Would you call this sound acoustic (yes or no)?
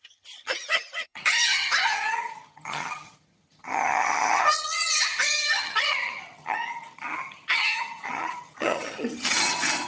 no